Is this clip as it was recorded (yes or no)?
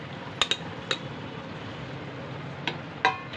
yes